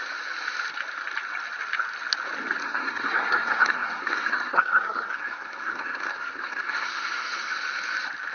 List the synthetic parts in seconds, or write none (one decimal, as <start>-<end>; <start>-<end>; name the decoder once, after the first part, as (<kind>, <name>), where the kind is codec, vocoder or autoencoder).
2.6-7.5 (codec, SNAC)